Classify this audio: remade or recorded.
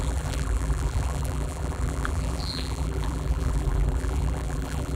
remade